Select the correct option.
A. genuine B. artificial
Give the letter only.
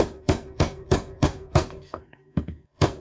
B